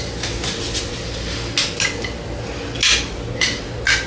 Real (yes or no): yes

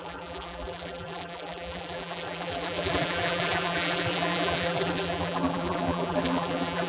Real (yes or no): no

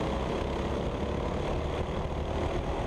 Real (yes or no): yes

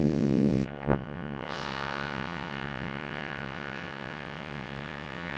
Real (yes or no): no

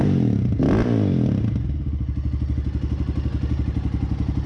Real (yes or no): yes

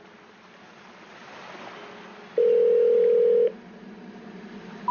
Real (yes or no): yes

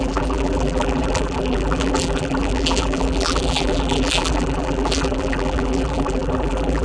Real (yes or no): no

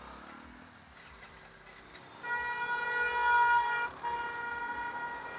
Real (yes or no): yes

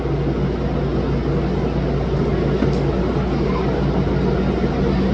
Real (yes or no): yes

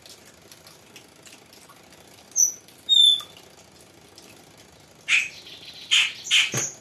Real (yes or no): yes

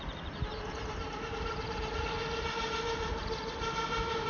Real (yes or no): no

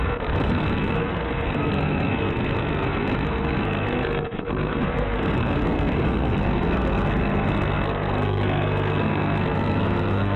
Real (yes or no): no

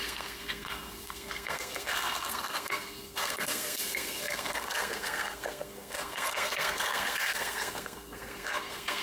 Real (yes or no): no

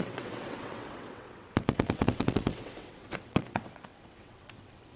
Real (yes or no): no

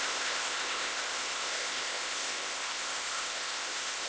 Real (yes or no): no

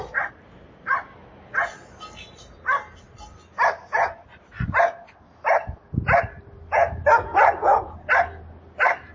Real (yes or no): yes